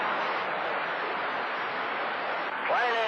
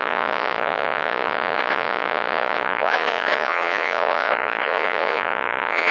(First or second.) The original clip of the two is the first